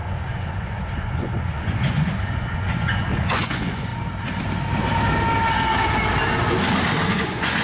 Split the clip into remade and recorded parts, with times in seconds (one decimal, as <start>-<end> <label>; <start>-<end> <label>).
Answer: 0.0-3.9 remade; 3.9-7.1 recorded; 7.1-7.6 remade